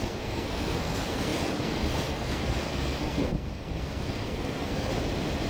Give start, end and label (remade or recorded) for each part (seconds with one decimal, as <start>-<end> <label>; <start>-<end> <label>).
0.0-4.9 remade; 4.9-5.5 recorded